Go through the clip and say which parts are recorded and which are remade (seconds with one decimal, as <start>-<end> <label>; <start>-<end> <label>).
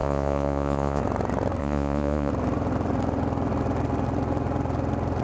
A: 0.0-1.0 remade; 1.0-1.6 recorded; 1.6-2.3 remade; 2.3-5.2 recorded